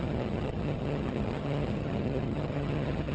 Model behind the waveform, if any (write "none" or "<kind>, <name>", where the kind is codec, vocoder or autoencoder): vocoder, HiFi-GAN